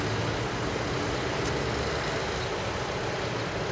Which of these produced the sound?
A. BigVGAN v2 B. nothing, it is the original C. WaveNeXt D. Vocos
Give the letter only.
B